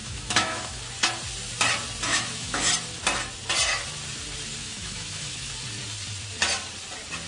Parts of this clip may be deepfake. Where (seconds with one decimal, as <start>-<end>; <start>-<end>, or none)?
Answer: 0.0-0.8; 2.1-2.7; 4.6-5.5